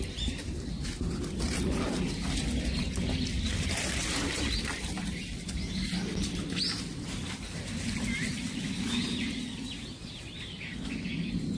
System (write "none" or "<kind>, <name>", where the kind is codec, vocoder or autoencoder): none